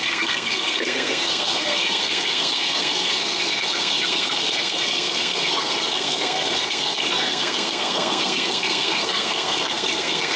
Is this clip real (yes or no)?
no